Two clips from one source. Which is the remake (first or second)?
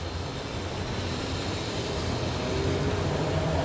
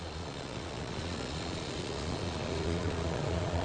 second